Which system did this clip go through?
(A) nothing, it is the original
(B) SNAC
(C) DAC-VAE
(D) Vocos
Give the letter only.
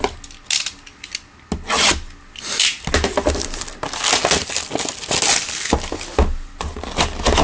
A